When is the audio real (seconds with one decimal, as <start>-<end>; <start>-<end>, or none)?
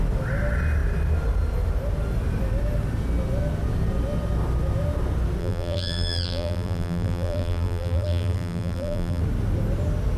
0.0-5.4; 9.2-10.2